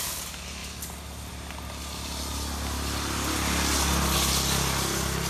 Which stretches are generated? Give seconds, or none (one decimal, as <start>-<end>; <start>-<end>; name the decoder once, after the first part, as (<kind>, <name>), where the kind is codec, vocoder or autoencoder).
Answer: none